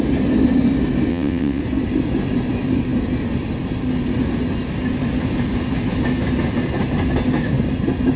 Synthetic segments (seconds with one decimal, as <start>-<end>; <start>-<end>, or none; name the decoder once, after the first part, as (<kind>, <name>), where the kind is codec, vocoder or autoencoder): 1.1-1.6 (vocoder, WaveNeXt)